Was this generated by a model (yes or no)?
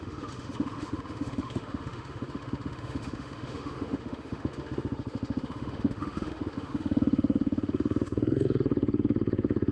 yes